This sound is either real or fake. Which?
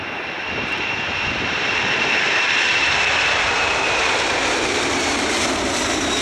fake